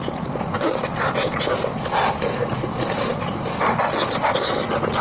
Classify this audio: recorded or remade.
recorded